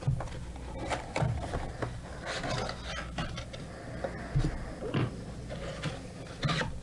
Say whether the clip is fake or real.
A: real